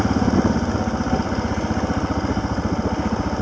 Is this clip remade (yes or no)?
no